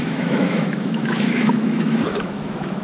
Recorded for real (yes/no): no